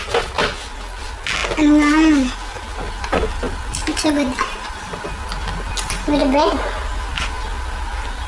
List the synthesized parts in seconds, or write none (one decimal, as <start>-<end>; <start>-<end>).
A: 3.9-5.1